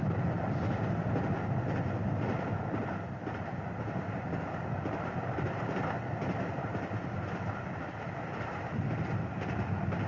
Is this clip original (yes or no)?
yes